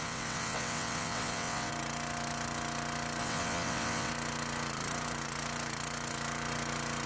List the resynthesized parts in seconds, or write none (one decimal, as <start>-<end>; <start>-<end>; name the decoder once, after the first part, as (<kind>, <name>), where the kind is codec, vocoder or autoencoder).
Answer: 0.0-1.7 (vocoder, WaveNeXt); 3.2-4.1